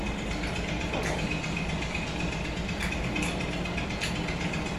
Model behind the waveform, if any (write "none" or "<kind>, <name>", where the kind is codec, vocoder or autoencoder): none